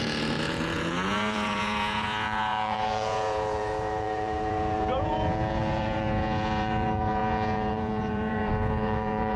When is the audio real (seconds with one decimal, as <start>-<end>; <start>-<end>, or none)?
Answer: none